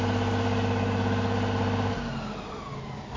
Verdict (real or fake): real